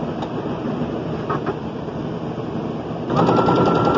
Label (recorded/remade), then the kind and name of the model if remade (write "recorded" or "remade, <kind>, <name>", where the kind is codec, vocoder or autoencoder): recorded